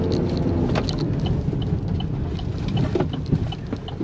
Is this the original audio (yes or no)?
yes